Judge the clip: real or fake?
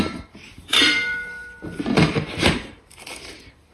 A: fake